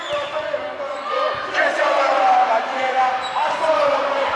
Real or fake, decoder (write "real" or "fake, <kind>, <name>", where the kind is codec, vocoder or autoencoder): real